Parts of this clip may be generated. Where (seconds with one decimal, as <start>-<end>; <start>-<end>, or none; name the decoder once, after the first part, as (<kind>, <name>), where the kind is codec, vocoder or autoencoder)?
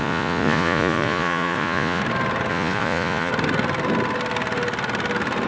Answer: 0.0-2.0 (vocoder, Vocos); 2.5-3.3